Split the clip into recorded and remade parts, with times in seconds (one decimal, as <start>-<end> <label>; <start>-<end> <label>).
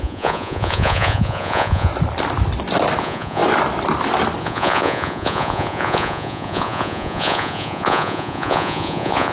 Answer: 0.0-1.9 remade; 1.9-3.0 recorded; 3.0-3.4 remade; 3.4-4.4 recorded; 4.4-9.3 remade